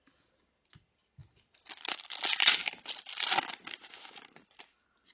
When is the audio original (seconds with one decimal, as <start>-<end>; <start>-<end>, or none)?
0.0-5.1